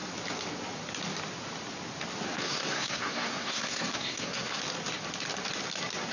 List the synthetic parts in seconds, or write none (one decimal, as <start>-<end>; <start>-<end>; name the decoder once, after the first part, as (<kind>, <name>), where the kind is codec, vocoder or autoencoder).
2.4-4.6 (codec, SNAC)